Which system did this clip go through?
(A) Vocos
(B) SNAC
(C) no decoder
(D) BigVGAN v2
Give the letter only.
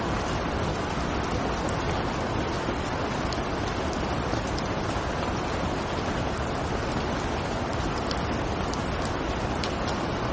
C